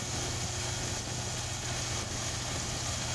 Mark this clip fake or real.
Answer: real